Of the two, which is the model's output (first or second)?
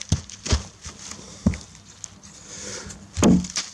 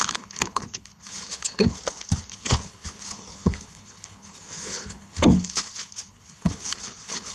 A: second